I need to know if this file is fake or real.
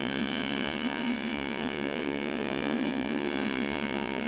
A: fake